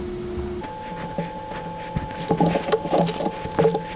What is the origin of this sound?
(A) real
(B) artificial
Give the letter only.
A